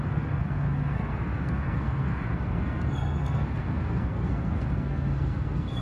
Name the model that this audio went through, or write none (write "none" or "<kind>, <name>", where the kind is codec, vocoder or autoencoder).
codec, SNAC